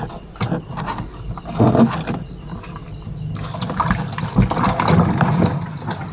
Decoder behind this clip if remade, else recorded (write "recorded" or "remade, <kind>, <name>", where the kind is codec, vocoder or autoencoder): recorded